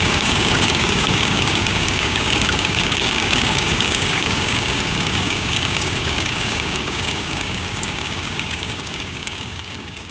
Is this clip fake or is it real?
fake